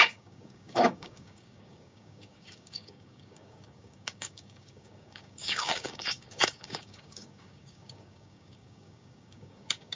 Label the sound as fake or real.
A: fake